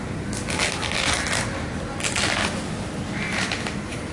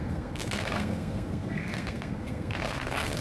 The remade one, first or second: second